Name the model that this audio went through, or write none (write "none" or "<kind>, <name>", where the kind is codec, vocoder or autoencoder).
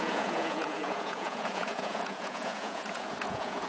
vocoder, Vocos